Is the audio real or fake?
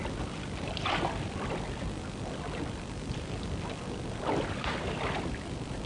fake